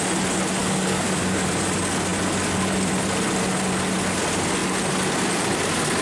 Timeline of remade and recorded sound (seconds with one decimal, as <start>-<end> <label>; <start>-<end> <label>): 0.0-0.6 recorded; 0.6-1.5 remade; 1.5-6.0 recorded